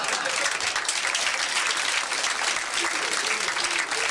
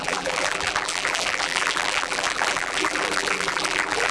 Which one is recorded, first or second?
first